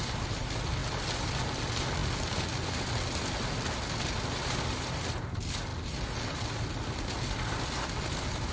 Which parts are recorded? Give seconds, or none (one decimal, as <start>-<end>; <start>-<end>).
0.0-8.5